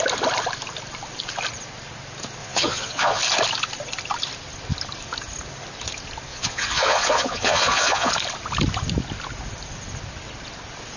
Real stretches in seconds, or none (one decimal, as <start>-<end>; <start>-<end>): 0.0-2.4; 3.2-6.3; 8.1-11.0